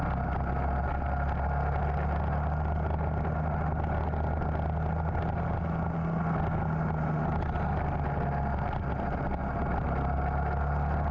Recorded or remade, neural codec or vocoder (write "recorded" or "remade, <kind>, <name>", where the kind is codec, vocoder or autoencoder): recorded